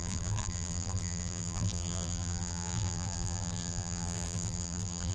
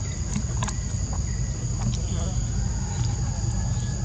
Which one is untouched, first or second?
second